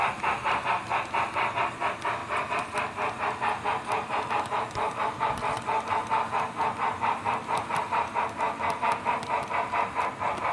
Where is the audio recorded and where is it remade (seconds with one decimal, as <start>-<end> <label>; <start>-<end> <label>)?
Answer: 0.0-10.5 recorded